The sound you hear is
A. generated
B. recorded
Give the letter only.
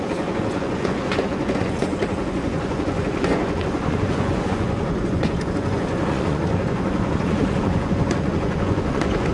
A